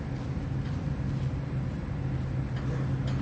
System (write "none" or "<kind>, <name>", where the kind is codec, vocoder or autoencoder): none